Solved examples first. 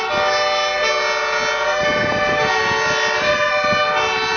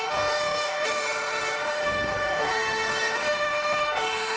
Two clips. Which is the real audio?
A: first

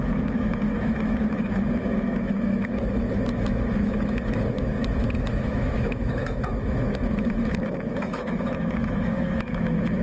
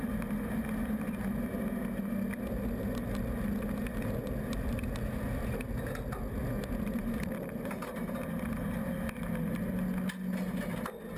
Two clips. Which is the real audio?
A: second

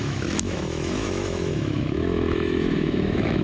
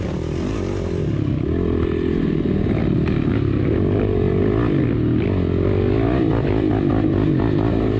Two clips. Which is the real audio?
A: second